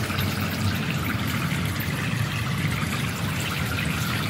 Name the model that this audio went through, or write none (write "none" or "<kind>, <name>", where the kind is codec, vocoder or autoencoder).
none